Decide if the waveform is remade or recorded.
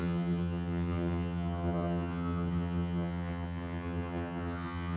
remade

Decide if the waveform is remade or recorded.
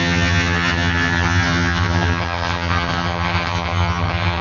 remade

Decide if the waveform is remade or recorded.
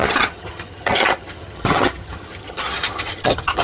remade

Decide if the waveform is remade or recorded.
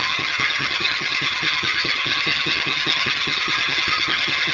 remade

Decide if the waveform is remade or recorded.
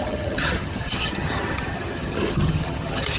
remade